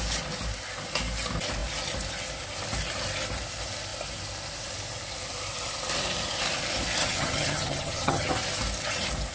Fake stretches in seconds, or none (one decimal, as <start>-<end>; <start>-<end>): 7.0-8.3